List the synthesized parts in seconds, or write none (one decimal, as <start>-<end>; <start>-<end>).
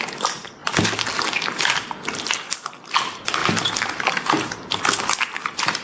none